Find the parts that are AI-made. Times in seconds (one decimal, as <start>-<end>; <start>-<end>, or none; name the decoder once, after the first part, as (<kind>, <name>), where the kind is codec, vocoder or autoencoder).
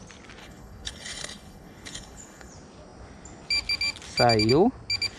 0.4-2.5 (codec, HILCodec)